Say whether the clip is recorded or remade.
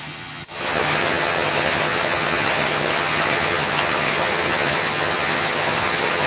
remade